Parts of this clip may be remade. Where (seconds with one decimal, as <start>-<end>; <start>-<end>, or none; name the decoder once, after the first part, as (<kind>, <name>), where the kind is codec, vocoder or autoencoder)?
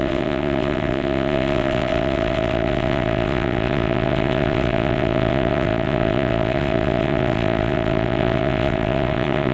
0.0-9.5 (vocoder, WaveNeXt)